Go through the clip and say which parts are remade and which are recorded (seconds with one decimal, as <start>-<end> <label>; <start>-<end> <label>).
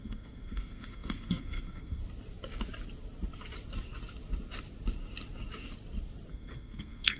0.0-2.0 remade; 2.0-6.3 recorded; 6.3-7.2 remade